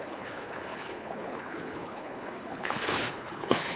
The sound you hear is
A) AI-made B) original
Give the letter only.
A